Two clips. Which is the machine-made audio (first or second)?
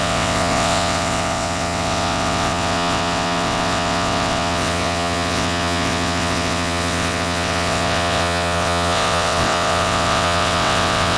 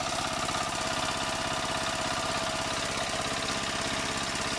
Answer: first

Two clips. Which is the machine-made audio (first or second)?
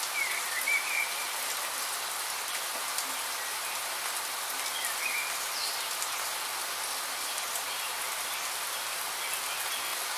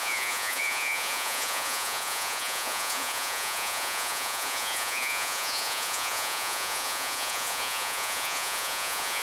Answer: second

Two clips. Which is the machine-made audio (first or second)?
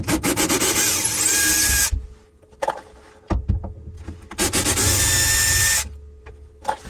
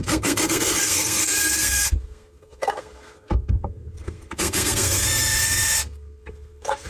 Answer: second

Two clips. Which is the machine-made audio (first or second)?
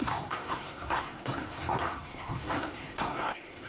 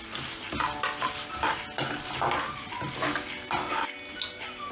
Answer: first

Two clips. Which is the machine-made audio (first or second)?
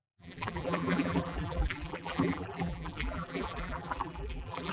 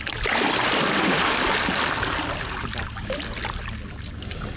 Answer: first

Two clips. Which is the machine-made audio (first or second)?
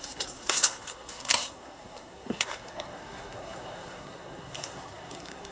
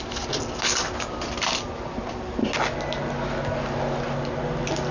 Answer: first